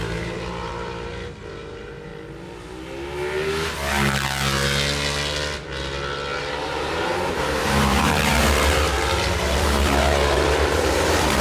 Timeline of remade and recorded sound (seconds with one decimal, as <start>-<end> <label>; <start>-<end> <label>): 0.0-2.1 remade; 2.1-6.4 recorded; 6.4-11.4 remade